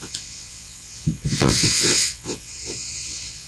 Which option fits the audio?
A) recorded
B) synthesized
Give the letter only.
B